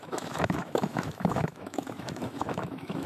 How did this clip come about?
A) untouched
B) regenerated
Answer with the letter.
B